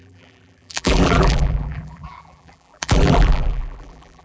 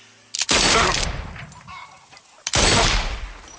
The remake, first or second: first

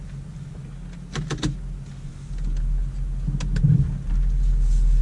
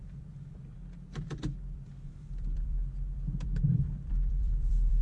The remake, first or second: second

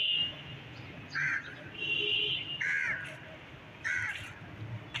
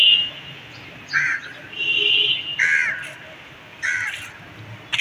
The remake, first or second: first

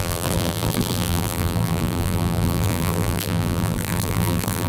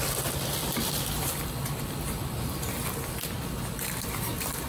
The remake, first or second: first